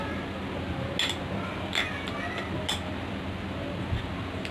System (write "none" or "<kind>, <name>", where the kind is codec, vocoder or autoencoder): none